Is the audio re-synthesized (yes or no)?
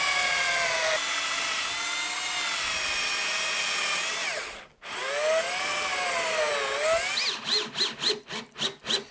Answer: no